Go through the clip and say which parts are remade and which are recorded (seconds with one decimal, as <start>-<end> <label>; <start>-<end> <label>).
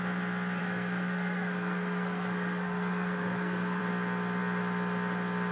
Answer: 0.0-0.6 recorded; 0.6-3.8 remade; 3.8-5.5 recorded